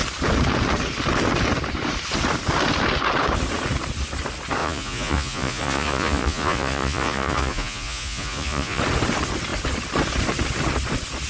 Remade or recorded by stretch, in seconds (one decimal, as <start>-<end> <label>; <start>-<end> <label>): 0.0-4.6 recorded; 4.6-8.8 remade; 8.8-11.3 recorded